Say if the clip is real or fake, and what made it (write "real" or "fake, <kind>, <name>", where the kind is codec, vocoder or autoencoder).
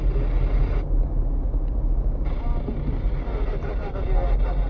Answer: real